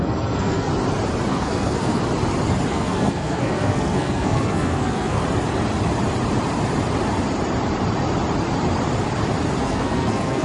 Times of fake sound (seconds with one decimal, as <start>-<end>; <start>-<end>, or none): 0.0-0.7; 1.3-2.0; 2.7-5.2; 9.6-10.4